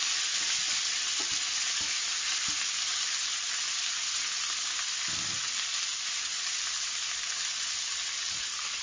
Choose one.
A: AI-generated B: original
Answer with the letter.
B